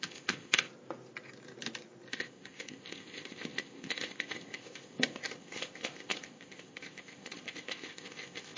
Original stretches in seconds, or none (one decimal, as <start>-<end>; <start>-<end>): 0.7-2.1